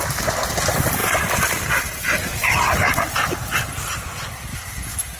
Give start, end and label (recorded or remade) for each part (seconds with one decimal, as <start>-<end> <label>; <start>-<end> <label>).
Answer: 0.0-1.0 recorded; 1.0-4.1 remade; 4.1-5.2 recorded